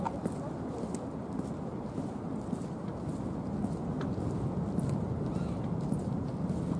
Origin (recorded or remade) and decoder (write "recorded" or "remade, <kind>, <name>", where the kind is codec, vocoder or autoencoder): recorded